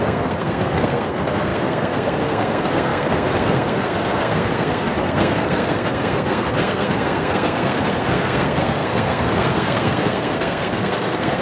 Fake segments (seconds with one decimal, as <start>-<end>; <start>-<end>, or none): 0.0-11.4